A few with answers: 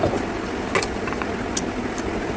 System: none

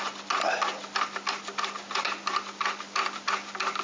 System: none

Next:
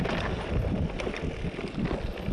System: none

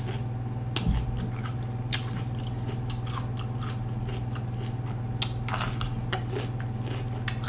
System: none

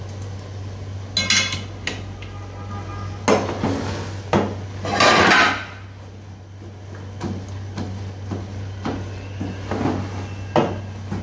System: none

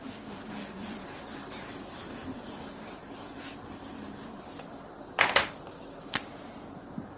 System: vocoder, BigVGAN v2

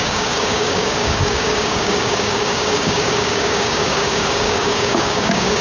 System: codec, DAC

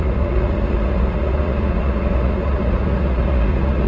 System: vocoder, Vocos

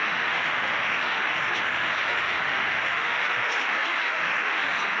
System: autoencoder, DAC-VAE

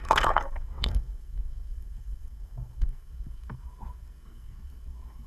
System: codec, SNAC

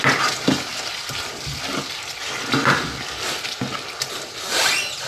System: none